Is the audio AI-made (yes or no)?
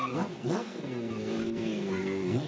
yes